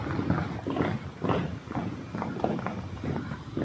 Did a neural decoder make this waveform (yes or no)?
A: no